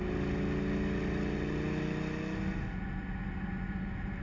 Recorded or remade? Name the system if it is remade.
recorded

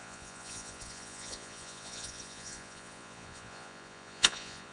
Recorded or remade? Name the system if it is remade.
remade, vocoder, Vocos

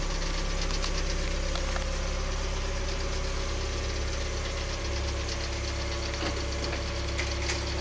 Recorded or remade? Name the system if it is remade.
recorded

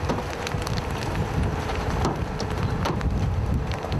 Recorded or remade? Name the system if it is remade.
recorded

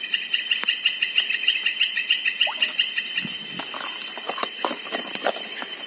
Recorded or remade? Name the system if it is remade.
recorded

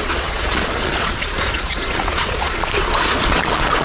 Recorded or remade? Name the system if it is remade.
remade, vocoder, Vocos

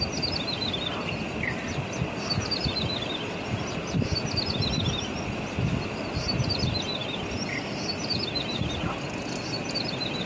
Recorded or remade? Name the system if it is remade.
recorded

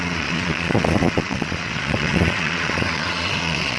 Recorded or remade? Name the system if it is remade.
remade, vocoder, Vocos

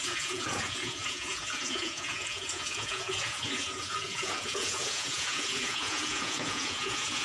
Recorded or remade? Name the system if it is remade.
remade, vocoder, Vocos